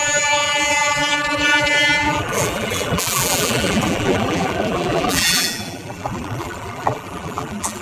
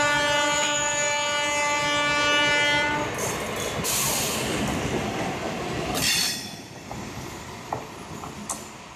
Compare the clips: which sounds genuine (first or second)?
second